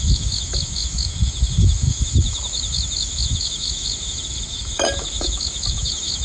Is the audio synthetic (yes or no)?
yes